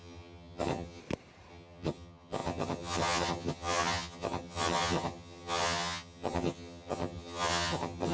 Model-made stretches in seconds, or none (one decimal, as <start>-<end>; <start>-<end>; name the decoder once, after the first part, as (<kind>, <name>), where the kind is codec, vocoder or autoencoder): 0.0-1.0 (vocoder, HiFi-GAN); 1.5-8.1